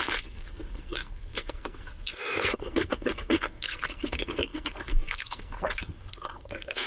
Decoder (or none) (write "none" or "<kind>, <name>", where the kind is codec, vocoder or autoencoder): codec, SNAC